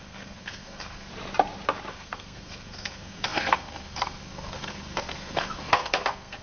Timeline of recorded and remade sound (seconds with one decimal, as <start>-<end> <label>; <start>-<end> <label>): 0.0-1.1 remade; 1.1-1.9 recorded; 1.9-6.4 remade